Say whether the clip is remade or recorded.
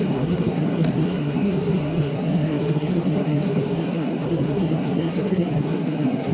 remade